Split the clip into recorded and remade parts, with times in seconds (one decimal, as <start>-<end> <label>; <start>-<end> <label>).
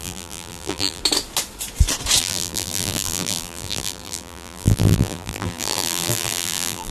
0.0-1.0 remade; 1.0-2.2 recorded; 2.2-6.9 remade